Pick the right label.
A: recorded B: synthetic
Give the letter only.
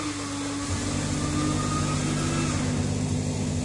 A